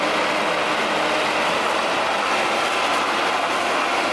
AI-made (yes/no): no